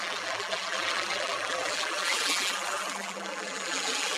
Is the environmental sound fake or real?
fake